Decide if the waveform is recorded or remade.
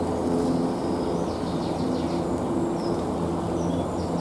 recorded